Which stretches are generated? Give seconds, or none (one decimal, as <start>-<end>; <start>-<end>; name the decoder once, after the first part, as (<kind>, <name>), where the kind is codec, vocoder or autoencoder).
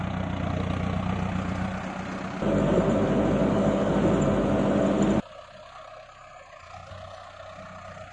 3.4-3.9 (codec, DAC)